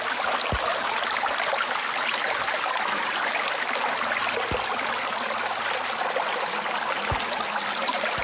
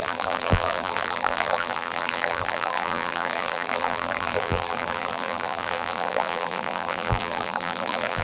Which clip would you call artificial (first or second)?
second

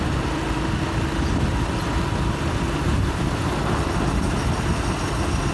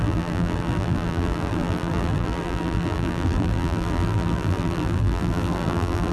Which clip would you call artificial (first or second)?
second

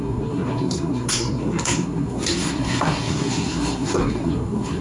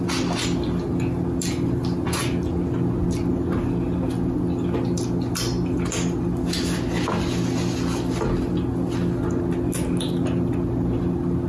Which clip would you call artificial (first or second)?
first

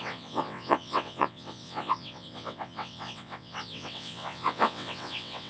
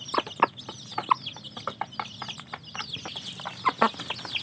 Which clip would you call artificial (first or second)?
first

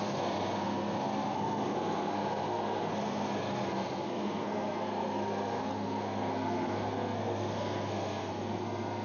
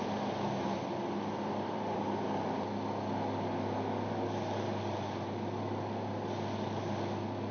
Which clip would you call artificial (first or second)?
first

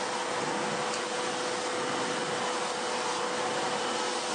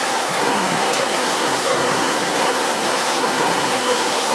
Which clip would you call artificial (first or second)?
second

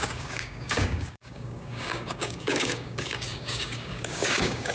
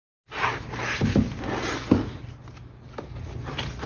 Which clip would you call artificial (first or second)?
first